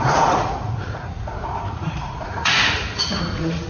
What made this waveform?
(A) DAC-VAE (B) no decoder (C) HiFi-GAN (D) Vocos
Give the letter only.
D